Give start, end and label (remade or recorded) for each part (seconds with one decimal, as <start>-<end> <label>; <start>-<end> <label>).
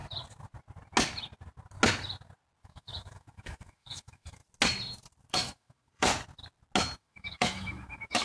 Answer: 0.0-2.6 recorded; 2.6-4.4 remade; 4.4-5.3 recorded; 5.3-6.1 remade; 6.1-7.0 recorded; 7.0-8.2 remade